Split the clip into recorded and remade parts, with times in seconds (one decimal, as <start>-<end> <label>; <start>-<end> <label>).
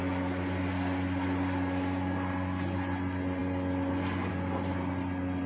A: 0.0-5.5 recorded